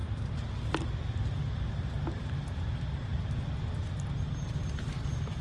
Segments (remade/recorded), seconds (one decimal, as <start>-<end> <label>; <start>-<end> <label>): 0.0-5.4 recorded